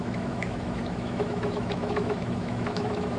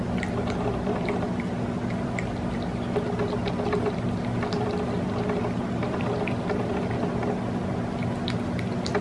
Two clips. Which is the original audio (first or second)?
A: second